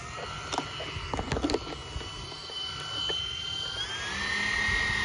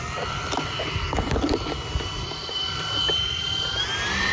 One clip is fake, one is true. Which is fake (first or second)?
second